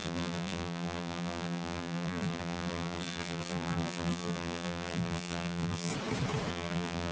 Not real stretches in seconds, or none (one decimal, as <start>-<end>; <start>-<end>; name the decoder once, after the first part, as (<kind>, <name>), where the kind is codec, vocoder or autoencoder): 0.0-5.9 (vocoder, BigVGAN v2); 6.5-7.1